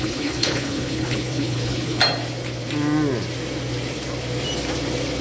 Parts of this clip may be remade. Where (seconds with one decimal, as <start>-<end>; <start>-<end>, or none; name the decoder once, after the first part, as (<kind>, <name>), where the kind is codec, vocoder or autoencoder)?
0.0-2.0 (codec, HILCodec)